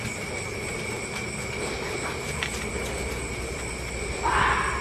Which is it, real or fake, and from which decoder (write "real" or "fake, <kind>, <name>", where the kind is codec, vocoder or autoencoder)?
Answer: real